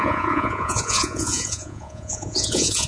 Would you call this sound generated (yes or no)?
yes